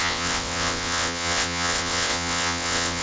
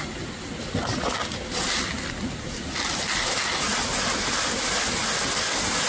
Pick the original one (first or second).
second